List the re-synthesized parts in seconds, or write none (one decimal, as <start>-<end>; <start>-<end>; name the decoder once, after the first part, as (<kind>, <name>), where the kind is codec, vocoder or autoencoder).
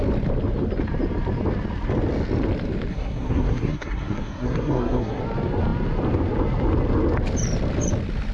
2.9-5.2 (codec, SNAC)